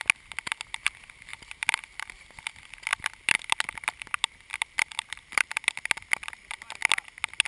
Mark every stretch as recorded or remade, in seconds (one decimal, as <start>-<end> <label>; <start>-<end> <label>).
0.0-1.3 recorded; 1.3-2.4 remade; 2.4-2.9 recorded; 2.9-3.5 remade; 3.5-4.5 recorded; 4.5-5.5 remade; 5.5-7.5 recorded

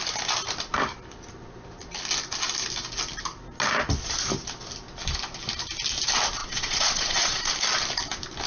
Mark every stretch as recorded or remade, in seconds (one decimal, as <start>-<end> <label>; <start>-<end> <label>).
0.0-6.4 recorded; 6.4-7.5 remade; 7.5-8.5 recorded

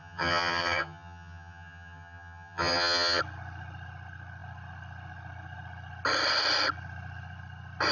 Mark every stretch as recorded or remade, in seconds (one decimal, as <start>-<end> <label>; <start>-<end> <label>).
0.0-3.2 remade; 3.2-7.9 recorded

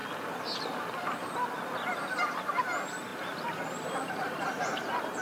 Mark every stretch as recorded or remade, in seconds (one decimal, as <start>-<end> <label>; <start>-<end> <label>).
0.0-1.9 recorded; 1.9-2.5 remade; 2.5-3.1 recorded; 3.1-4.6 remade; 4.6-5.2 recorded

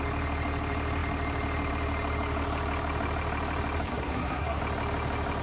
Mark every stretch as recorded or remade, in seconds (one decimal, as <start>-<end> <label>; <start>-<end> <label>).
0.0-3.9 recorded; 3.9-4.6 remade; 4.6-5.4 recorded

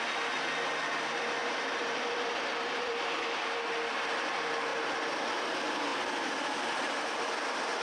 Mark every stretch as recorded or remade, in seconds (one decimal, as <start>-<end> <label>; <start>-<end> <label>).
0.0-1.4 recorded; 1.4-3.7 remade; 3.7-5.9 recorded; 5.9-7.8 remade

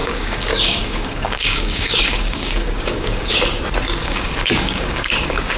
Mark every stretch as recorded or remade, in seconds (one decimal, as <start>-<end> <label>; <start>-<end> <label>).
0.0-3.4 remade; 3.4-4.0 recorded; 4.0-5.6 remade

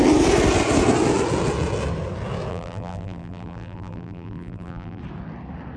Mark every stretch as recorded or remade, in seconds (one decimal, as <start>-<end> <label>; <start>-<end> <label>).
0.0-2.5 recorded; 2.5-5.0 remade; 5.0-5.8 recorded